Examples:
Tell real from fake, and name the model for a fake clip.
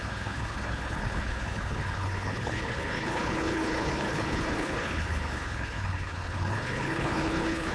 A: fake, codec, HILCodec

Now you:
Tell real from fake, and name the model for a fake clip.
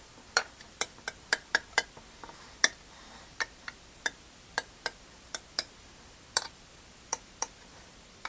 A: fake, vocoder, BigVGAN v2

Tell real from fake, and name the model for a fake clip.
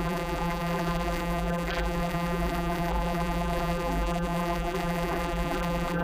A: fake, vocoder, BigVGAN v2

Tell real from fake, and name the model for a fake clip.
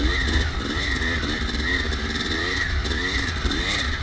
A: fake, vocoder, BigVGAN v2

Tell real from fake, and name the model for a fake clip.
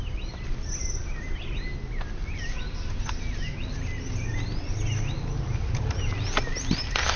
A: real